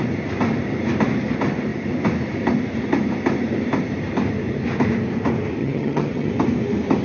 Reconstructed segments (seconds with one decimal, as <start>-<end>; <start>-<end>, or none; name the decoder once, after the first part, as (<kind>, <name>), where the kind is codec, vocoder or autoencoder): 5.6-6.3 (vocoder, HiFi-GAN)